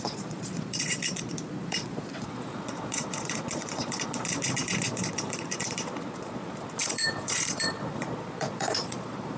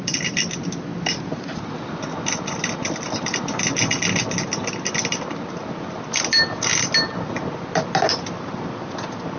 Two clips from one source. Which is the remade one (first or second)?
first